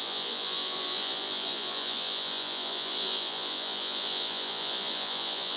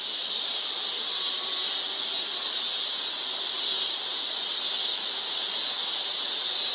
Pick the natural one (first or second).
second